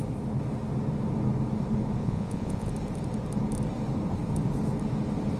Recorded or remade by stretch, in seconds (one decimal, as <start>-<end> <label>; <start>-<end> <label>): 0.0-2.0 recorded; 2.0-2.7 remade; 2.7-5.4 recorded